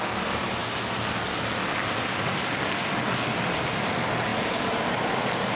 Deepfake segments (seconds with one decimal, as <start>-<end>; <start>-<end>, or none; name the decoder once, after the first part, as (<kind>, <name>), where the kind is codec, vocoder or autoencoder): none